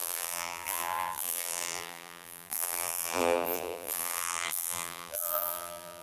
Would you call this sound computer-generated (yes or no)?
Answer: yes